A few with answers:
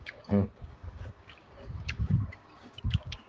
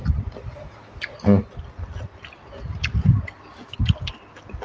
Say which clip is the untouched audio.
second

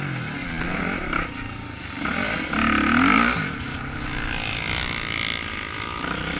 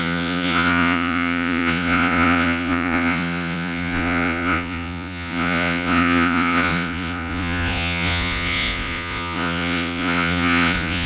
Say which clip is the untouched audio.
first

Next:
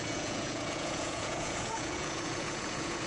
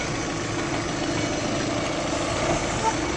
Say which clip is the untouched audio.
second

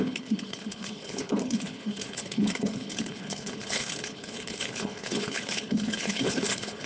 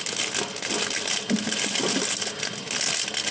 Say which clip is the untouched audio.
second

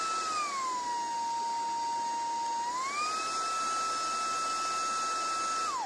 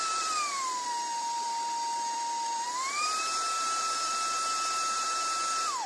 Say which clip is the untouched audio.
first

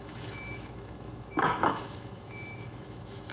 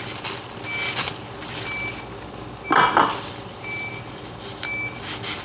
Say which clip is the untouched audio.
second